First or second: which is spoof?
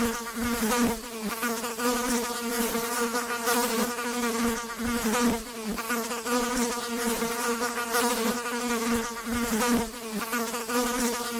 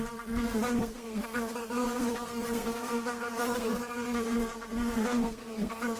second